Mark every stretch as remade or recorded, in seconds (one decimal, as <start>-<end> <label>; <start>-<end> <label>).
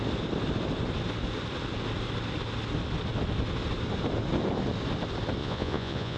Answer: 0.0-5.4 recorded; 5.4-6.2 remade